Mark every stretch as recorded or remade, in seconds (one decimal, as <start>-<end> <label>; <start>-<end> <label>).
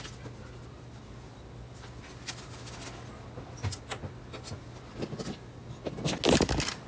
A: 0.0-6.9 recorded